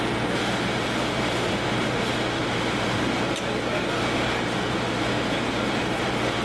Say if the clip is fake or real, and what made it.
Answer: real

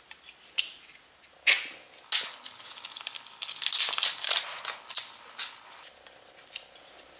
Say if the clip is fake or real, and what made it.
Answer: real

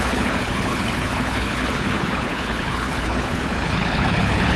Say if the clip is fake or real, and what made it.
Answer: fake, codec, HILCodec